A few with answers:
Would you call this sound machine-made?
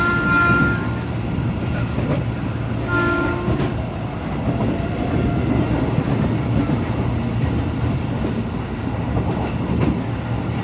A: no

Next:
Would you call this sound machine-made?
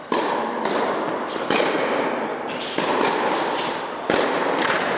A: no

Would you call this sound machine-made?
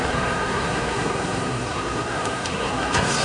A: yes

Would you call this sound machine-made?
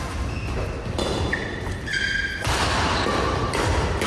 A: no